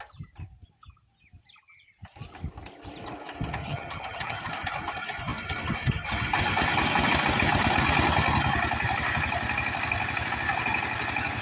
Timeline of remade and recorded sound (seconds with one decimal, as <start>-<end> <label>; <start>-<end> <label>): 0.0-3.6 recorded; 3.6-4.5 remade; 4.5-11.4 recorded